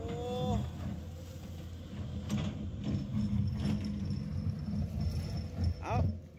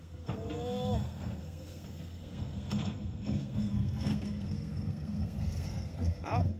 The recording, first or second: first